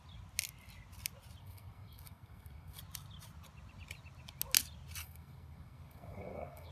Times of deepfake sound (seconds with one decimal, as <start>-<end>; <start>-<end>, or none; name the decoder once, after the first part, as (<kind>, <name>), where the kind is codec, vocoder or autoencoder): 1.4-2.8 (codec, SNAC); 5.0-6.7